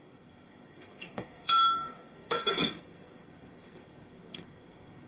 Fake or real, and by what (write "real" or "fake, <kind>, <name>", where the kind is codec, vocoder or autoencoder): fake, codec, SNAC